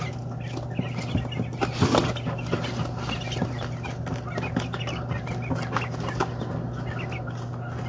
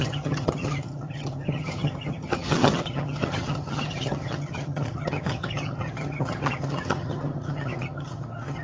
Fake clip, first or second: second